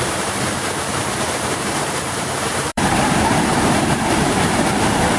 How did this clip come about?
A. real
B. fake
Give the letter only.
B